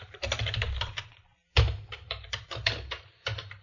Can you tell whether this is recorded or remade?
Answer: remade